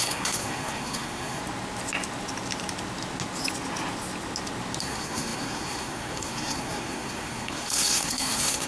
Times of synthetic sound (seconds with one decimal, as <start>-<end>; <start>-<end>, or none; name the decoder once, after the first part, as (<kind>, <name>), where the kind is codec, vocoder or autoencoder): 0.0-1.4 (codec, SNAC); 4.8-8.7